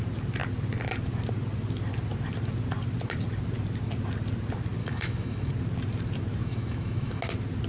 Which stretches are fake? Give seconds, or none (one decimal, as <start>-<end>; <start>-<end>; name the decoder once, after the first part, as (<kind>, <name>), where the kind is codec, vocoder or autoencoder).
4.8-5.5 (autoencoder, DAC-VAE); 6.4-7.2